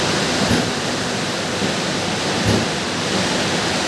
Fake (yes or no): no